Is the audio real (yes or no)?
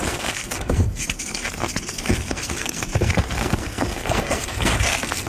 no